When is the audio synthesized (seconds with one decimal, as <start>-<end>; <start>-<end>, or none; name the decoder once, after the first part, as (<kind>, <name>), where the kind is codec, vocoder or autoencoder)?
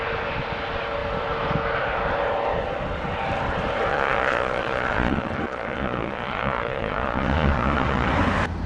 3.9-8.1 (vocoder, Vocos)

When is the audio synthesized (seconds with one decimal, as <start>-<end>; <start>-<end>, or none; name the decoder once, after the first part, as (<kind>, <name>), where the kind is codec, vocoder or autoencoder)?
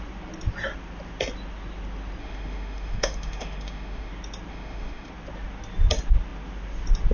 2.2-4.1 (autoencoder, DAC-VAE); 4.5-5.1